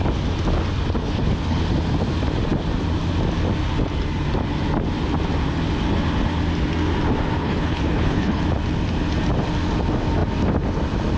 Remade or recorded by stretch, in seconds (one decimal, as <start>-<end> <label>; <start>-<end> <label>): 0.0-1.0 recorded; 1.0-1.6 remade; 1.6-7.4 recorded; 7.4-8.4 remade; 8.4-11.2 recorded